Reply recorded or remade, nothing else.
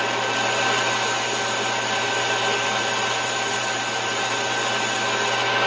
recorded